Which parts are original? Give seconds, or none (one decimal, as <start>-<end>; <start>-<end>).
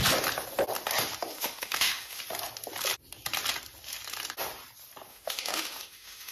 0.0-1.3; 2.2-5.1